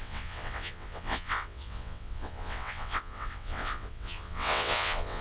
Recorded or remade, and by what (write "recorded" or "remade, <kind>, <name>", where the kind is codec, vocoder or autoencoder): remade, vocoder, WaveNeXt